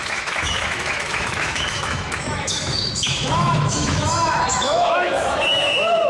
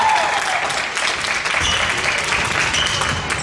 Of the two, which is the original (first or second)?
second